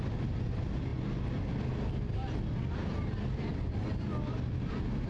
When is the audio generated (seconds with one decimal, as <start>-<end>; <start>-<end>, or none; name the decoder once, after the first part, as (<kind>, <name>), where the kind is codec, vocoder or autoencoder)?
none